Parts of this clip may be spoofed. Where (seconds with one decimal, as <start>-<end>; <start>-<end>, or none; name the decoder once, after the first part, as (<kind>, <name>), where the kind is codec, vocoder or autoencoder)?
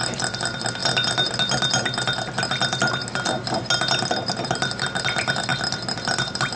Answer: none